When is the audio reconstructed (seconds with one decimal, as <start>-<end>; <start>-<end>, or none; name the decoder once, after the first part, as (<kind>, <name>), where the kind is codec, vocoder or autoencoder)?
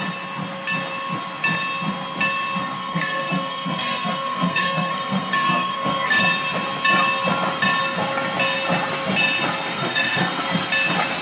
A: 2.8-6.2 (codec, SNAC); 9.7-10.4